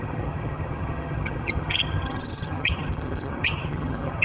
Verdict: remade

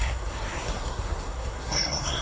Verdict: remade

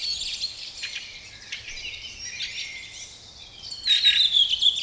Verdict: recorded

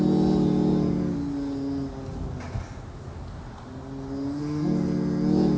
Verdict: recorded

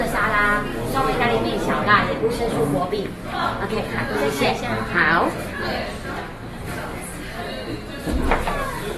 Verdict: recorded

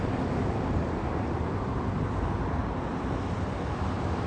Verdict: recorded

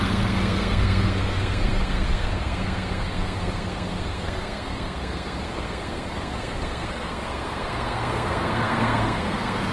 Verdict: remade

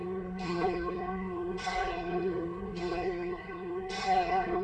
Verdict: remade